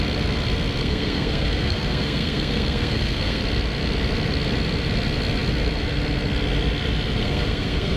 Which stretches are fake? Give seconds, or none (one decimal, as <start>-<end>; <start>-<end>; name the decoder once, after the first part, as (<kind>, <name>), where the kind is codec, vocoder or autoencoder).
0.8-3.4 (codec, SNAC); 7.2-8.0